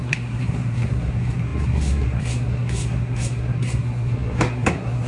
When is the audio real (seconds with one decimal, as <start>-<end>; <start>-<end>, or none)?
none